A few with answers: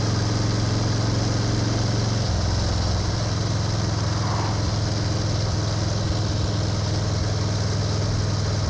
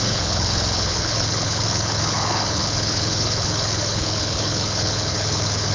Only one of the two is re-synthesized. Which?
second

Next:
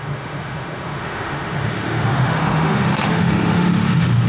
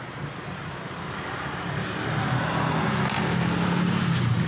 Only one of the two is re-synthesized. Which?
first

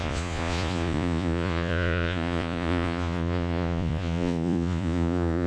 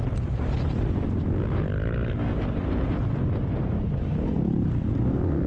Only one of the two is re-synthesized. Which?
first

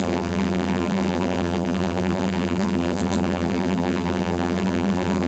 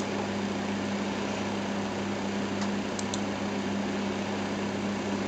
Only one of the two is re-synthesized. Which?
first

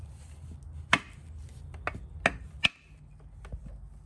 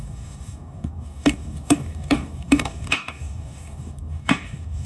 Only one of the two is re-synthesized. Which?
second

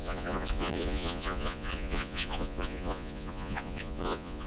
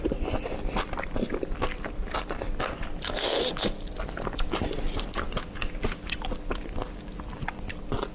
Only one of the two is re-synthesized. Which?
first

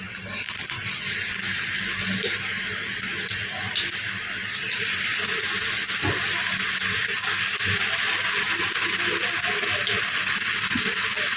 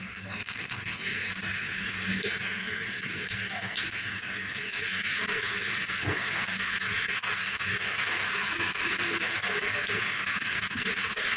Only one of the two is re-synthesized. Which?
second